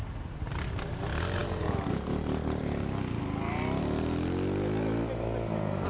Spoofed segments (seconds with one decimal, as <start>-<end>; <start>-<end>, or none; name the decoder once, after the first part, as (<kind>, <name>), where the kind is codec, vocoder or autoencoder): none